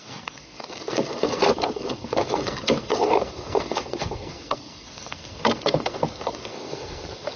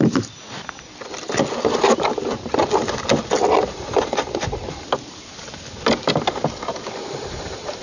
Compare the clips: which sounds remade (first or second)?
first